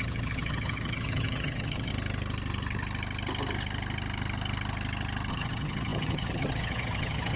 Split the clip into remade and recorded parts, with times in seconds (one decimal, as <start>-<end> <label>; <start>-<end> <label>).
0.0-1.9 remade; 1.9-5.3 recorded; 5.3-7.4 remade